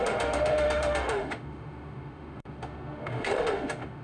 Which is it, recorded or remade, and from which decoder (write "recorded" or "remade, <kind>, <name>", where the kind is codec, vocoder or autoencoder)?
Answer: remade, autoencoder, DAC-VAE